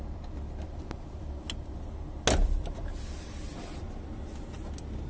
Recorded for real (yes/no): yes